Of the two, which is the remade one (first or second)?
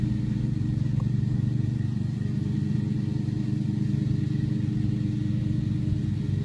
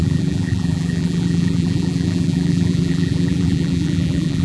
second